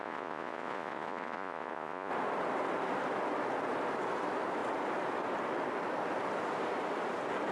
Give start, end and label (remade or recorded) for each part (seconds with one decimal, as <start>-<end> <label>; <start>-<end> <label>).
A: 0.0-2.1 remade; 2.1-7.5 recorded